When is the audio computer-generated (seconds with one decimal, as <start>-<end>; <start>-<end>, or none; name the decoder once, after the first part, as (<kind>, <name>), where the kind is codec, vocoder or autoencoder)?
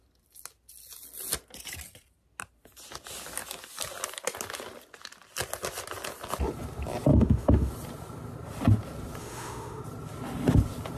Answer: 7.1-7.7 (autoencoder, DAC-VAE); 9.2-9.8